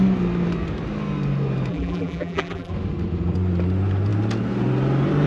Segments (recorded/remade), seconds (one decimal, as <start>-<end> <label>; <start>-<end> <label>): 0.0-1.7 recorded; 1.7-2.7 remade; 2.7-5.3 recorded